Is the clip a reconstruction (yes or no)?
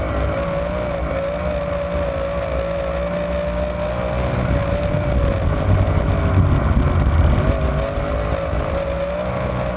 no